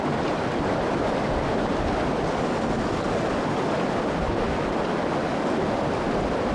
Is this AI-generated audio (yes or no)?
no